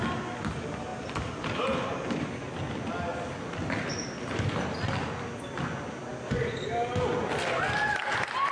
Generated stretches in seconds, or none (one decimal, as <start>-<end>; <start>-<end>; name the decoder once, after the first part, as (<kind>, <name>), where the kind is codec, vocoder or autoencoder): none